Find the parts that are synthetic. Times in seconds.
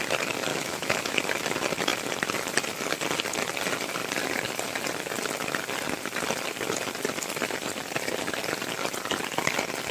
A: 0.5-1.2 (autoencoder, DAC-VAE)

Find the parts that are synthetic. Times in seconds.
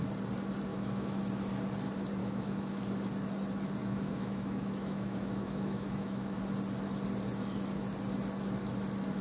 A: 0.7-1.2 (autoencoder, DAC-VAE); 2.2-2.8; 3.8-6.4